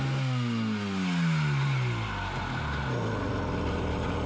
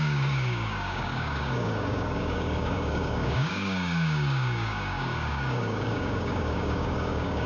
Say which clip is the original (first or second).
first